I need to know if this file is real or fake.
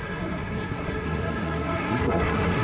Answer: fake